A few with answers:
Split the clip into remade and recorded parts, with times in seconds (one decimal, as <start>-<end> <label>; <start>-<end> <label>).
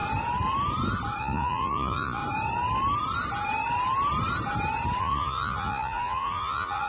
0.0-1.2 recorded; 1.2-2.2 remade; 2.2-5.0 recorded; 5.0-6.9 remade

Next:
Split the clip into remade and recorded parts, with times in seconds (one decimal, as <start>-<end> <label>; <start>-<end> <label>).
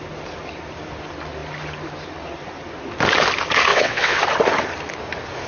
0.0-3.7 recorded; 3.7-4.2 remade; 4.2-5.5 recorded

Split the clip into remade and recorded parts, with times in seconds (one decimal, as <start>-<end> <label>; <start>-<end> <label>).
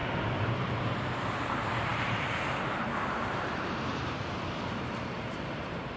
0.0-0.8 recorded; 0.8-6.0 remade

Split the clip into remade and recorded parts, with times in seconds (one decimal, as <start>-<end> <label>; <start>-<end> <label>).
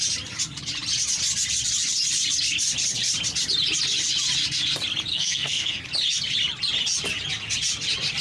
0.0-5.1 recorded; 5.1-5.8 remade; 5.8-8.2 recorded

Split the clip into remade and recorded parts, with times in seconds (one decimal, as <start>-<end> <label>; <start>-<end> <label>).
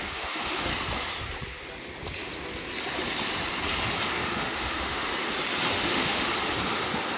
0.0-0.7 remade; 0.7-4.2 recorded; 4.2-5.1 remade; 5.1-5.7 recorded; 5.7-6.3 remade; 6.3-7.2 recorded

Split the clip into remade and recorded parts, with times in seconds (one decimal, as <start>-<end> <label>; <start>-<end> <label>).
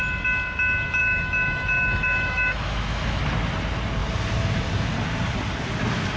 0.0-1.0 recorded; 1.0-3.2 remade; 3.2-6.2 recorded